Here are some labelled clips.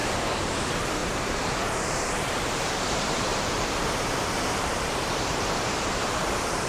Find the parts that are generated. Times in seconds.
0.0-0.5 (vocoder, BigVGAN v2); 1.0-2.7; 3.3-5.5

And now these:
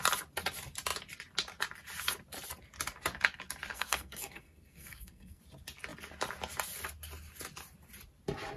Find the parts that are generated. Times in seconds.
3.7-5.4 (codec, SNAC)

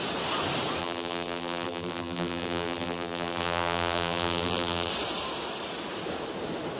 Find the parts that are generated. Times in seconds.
0.8-4.9 (vocoder, BigVGAN v2)

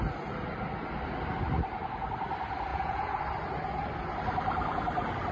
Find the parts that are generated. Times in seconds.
2.7-3.2 (vocoder, Vocos)

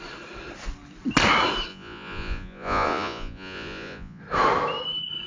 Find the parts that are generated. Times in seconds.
1.7-4.2 (vocoder, Vocos)